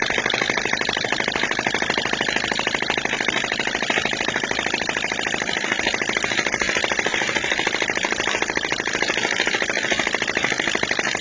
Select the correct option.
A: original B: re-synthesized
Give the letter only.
A